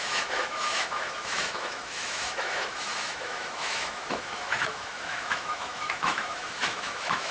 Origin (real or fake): fake